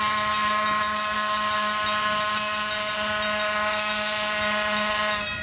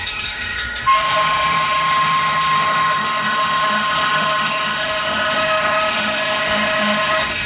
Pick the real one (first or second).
first